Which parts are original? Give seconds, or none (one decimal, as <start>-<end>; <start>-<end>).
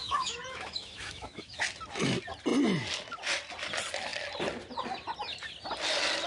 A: 1.6-6.3